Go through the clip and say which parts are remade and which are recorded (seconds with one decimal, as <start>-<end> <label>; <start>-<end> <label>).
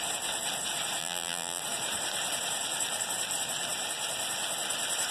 0.0-1.0 recorded; 1.0-1.6 remade; 1.6-5.1 recorded